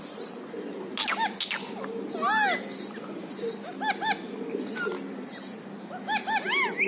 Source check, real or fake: real